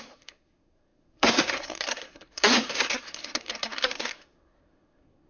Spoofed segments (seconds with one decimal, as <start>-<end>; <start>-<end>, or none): 0.0-5.3